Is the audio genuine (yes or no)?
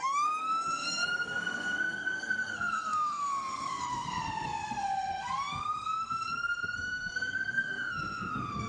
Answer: no